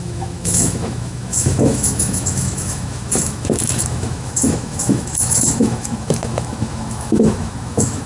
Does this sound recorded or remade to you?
remade